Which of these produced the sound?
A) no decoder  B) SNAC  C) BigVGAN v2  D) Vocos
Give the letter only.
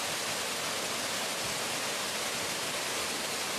A